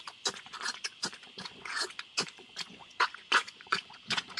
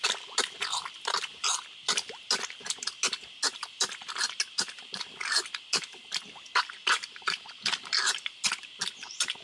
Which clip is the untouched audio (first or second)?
second